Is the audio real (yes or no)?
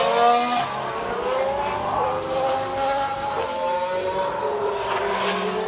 yes